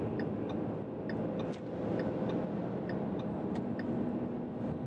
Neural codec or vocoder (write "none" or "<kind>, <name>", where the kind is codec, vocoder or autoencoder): none